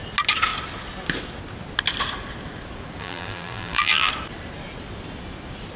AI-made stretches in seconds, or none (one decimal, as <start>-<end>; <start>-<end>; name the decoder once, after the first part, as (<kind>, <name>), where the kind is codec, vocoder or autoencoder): 3.0-4.1 (vocoder, BigVGAN v2)